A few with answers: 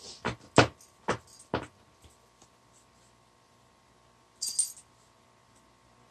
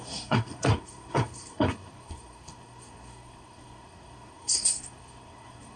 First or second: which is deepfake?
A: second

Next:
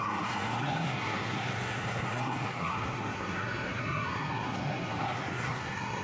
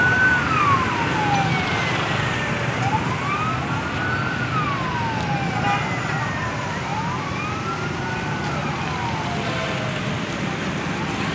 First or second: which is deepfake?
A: first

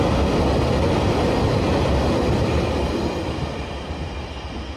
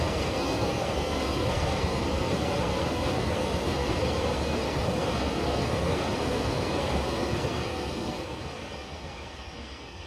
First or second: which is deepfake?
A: second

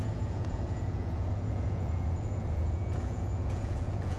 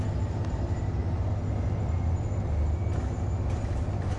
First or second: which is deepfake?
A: first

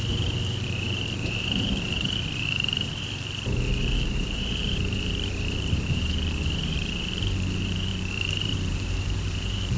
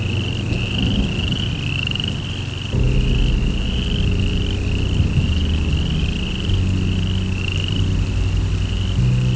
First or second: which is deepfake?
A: first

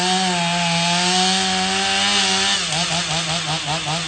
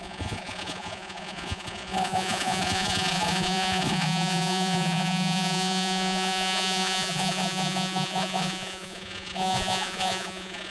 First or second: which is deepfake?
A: second